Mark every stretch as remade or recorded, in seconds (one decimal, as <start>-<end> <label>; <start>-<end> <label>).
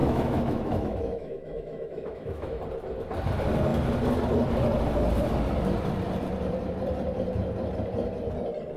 0.0-2.6 remade; 2.6-8.8 recorded